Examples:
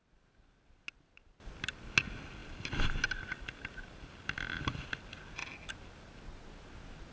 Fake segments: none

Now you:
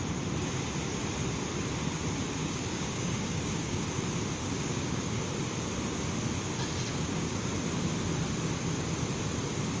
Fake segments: 2.4-3.8 (codec, DAC); 4.4-5.2; 6.9-7.5

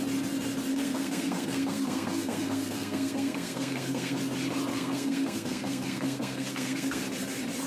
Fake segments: 0.7-4.2 (codec, SNAC); 4.7-7.0

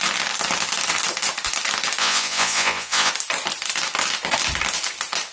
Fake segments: 2.0-3.1 (vocoder, Vocos)